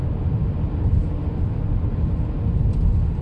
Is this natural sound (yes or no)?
yes